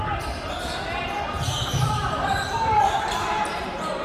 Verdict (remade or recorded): remade